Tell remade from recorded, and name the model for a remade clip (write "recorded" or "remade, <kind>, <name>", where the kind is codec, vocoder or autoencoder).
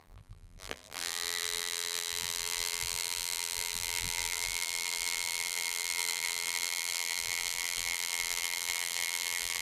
remade, vocoder, BigVGAN v2